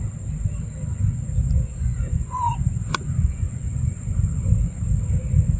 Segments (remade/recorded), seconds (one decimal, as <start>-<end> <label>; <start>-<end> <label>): 0.0-1.4 recorded; 1.4-4.8 remade; 4.8-5.6 recorded